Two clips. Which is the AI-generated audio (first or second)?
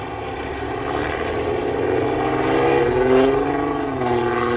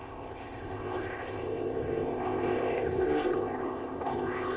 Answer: second